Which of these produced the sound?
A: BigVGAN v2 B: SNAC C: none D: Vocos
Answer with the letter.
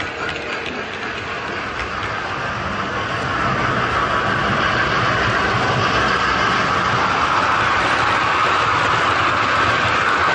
C